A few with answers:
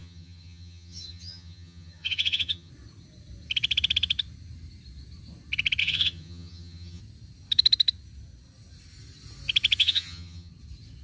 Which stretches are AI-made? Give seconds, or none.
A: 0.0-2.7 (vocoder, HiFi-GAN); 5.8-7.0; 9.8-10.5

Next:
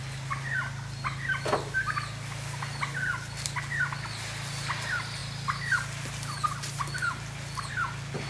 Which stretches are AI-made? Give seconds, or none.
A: none

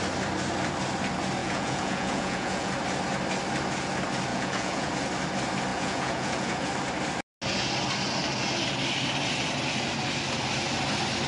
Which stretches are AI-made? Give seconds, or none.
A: 1.4-2.7 (vocoder, Vocos); 4.3-4.9; 5.7-6.7

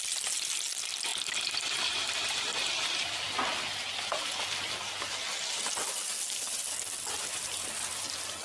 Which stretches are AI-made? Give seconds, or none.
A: none

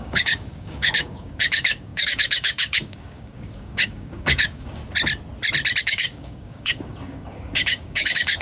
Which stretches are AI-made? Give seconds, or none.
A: 0.0-4.8 (codec, DAC); 5.8-8.4

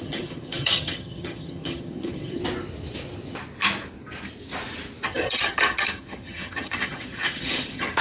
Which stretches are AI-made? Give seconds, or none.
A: 0.0-2.4 (vocoder, HiFi-GAN); 5.1-8.0

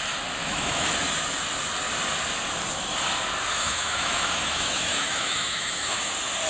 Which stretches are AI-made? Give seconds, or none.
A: 0.4-0.9 (autoencoder, DAC-VAE); 3.5-6.1